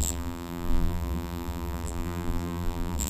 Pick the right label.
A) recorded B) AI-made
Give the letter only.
B